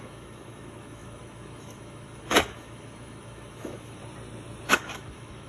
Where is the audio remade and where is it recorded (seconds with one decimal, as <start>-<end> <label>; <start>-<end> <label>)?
0.0-4.0 remade; 4.0-4.7 recorded; 4.7-5.5 remade